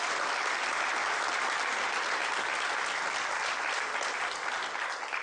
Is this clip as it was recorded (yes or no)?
yes